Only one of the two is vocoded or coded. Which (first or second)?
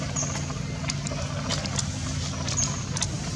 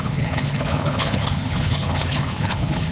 second